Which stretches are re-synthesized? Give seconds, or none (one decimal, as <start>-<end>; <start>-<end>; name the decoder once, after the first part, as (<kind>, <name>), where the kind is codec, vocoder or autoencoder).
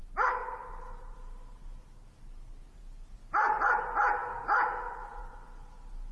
none